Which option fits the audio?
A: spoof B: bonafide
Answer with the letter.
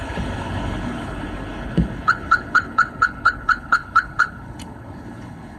A